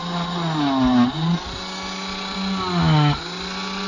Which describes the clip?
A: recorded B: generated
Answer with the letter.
A